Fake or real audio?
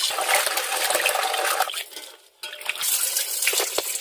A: real